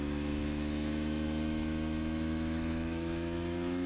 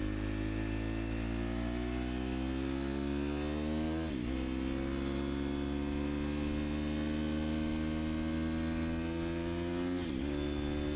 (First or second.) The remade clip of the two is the first